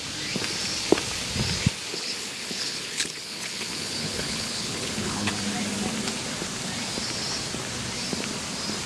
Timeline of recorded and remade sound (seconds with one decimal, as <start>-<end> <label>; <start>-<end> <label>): 0.0-1.9 recorded; 1.9-5.3 remade; 5.3-8.9 recorded